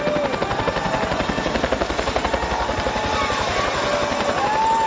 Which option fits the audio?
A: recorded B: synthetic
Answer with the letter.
A